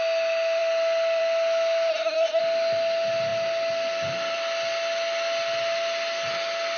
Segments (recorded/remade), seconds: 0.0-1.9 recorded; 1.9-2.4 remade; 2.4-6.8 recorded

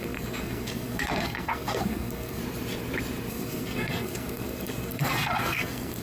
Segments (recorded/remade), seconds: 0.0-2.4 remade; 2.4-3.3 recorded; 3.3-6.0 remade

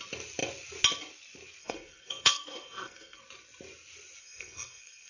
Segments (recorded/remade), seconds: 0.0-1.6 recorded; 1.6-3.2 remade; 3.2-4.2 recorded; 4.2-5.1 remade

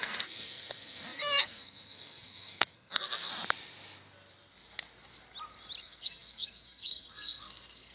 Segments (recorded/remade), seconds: 0.0-3.3 remade; 3.3-5.8 recorded; 5.8-7.9 remade

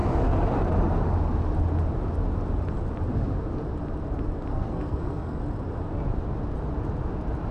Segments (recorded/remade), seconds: 0.0-4.5 recorded; 4.5-5.4 remade; 5.4-7.5 recorded

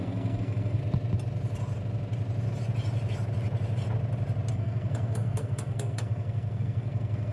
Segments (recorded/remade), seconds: 0.0-0.8 remade; 0.8-4.5 recorded; 4.5-7.3 remade

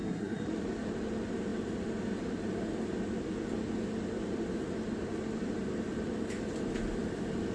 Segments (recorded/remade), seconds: 0.0-0.5 remade; 0.5-7.5 recorded

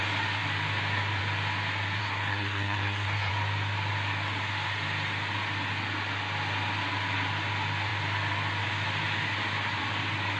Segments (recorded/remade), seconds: 0.0-2.0 recorded; 2.0-3.3 remade; 3.3-10.4 recorded